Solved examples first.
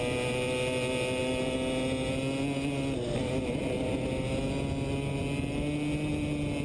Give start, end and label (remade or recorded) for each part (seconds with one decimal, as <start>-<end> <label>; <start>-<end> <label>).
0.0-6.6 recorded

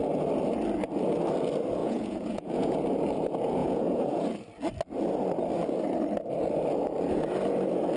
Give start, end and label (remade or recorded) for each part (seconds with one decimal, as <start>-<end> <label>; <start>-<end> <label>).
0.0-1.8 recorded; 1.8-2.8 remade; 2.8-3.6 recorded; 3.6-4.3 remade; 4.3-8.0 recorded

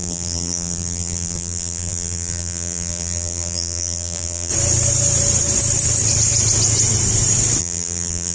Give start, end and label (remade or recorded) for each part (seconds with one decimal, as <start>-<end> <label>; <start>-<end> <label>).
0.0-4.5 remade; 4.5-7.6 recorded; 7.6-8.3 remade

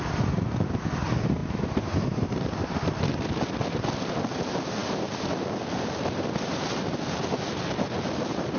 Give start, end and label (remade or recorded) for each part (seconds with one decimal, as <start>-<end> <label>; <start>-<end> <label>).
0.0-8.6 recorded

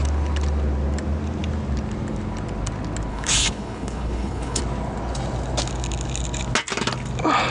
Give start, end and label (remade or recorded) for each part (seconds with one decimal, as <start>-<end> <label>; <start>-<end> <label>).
0.0-3.1 recorded; 3.1-4.6 remade; 4.6-7.5 recorded